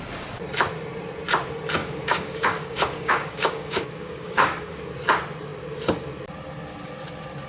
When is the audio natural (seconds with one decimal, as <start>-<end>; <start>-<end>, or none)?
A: 0.0-1.8; 4.9-7.5